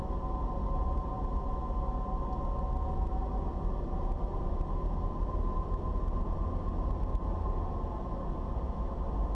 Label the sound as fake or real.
real